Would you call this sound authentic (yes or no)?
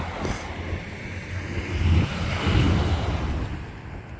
yes